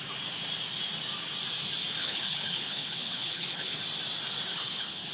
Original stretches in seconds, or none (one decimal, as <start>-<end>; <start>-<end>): 0.0-2.0; 3.8-4.5